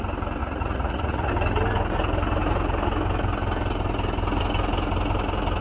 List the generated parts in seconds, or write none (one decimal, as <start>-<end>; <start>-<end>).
0.4-1.3